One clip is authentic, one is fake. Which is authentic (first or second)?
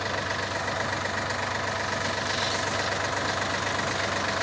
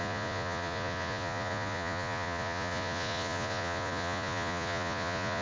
first